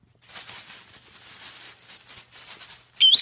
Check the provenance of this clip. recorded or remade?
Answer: recorded